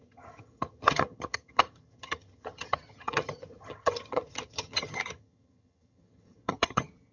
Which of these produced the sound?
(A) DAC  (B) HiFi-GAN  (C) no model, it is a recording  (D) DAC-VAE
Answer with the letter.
B